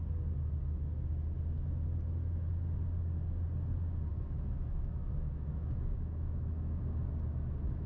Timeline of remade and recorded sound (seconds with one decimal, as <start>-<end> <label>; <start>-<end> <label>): 0.0-4.1 recorded; 4.1-6.8 remade; 6.8-7.9 recorded